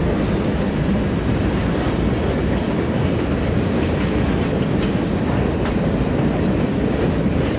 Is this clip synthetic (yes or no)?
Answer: no